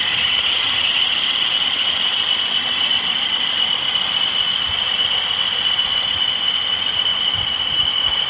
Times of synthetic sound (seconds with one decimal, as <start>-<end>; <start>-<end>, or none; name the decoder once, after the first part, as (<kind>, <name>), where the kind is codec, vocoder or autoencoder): 0.0-8.3 (vocoder, BigVGAN v2)